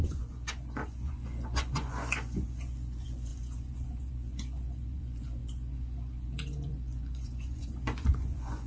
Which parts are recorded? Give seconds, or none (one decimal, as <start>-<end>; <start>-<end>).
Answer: none